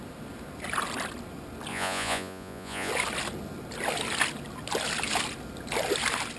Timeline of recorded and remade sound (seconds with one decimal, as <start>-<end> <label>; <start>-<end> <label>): 0.0-1.7 recorded; 1.7-2.9 remade; 2.9-6.4 recorded